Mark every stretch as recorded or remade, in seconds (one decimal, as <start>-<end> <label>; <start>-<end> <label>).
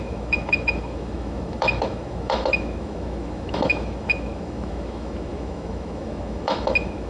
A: 0.0-7.1 remade